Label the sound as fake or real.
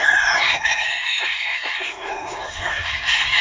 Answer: fake